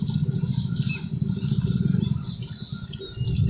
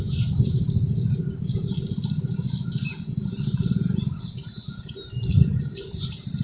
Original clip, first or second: first